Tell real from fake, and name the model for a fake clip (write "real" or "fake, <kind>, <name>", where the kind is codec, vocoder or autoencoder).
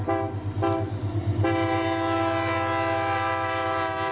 real